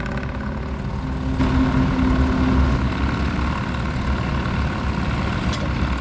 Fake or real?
real